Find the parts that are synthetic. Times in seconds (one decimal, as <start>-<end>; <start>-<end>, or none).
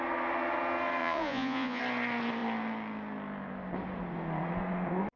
1.0-1.8